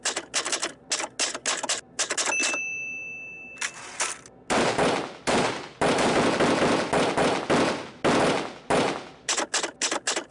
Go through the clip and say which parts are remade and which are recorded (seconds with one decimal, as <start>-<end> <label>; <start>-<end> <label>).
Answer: 0.0-10.3 recorded